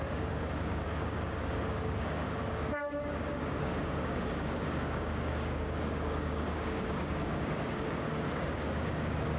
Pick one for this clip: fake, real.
fake